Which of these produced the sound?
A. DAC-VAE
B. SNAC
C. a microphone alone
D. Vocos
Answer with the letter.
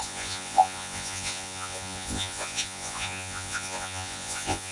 D